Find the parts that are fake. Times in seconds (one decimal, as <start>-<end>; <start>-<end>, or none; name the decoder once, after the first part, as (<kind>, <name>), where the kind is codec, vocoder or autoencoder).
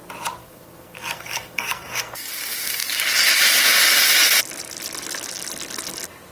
0.4-2.3 (codec, SNAC)